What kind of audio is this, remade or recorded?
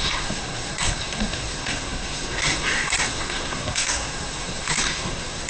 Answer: remade